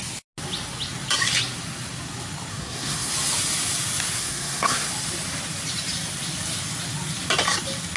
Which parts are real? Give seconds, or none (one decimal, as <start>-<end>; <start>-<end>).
0.0-2.5; 3.1-4.2; 4.9-8.0